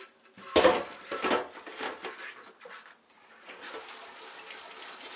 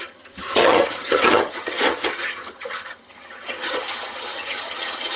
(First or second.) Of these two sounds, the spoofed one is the second